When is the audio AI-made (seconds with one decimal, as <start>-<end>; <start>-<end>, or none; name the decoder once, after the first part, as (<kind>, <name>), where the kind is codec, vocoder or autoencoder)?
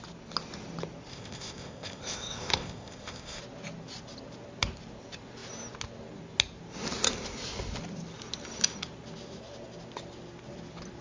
1.1-3.4 (codec, ZipCodec)